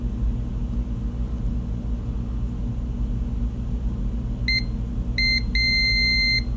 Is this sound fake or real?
real